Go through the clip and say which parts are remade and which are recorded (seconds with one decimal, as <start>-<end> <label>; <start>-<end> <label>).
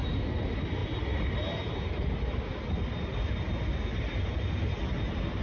0.0-5.4 recorded